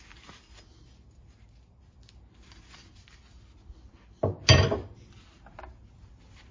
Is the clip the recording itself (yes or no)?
yes